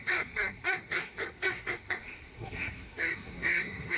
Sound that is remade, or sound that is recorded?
remade